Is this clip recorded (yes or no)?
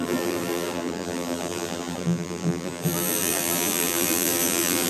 no